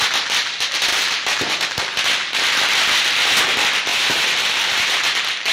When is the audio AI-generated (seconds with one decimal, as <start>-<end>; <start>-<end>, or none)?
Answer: 0.9-1.6; 3.9-5.0